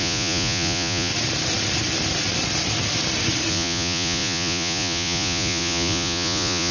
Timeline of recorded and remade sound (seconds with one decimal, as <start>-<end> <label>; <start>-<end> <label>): 0.0-1.1 remade; 1.1-3.5 recorded; 3.5-6.7 remade